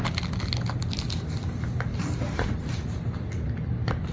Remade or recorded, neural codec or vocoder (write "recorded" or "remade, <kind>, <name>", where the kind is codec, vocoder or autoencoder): recorded